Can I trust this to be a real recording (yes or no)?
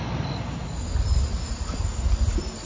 yes